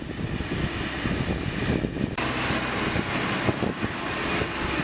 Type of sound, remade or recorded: recorded